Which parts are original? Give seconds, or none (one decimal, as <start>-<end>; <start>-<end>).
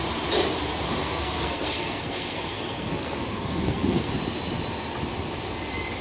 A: 0.0-1.0; 4.1-6.0